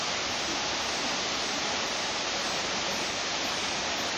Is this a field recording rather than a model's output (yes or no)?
yes